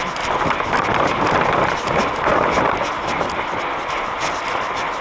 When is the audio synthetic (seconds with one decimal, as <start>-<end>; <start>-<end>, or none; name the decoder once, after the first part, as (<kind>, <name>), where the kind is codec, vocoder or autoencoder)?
none

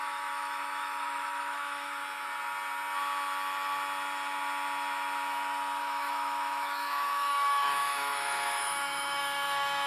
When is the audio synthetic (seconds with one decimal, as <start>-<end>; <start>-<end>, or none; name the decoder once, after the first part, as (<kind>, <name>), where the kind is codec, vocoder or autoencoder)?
0.0-2.0 (autoencoder, DAC-VAE); 5.8-9.9

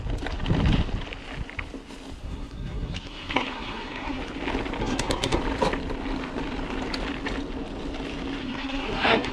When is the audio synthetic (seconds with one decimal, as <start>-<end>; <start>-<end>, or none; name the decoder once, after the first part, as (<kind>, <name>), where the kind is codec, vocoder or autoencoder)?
2.2-4.2 (codec, SNAC); 4.8-5.4; 8.4-9.3

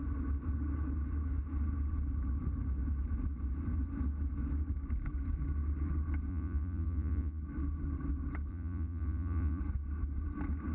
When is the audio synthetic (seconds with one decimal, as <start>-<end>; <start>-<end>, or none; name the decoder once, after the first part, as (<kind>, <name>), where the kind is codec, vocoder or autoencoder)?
6.3-7.4 (vocoder, Vocos); 8.5-9.6

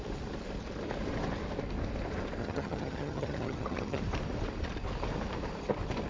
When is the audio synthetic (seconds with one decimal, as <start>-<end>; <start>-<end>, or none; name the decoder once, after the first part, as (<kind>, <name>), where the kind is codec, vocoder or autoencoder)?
2.4-4.0 (vocoder, HiFi-GAN)